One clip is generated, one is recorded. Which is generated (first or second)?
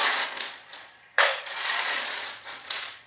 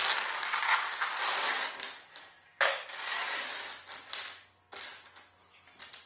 first